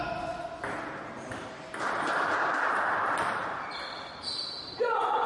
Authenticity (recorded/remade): recorded